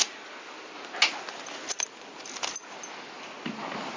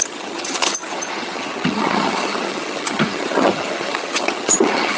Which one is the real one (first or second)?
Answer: first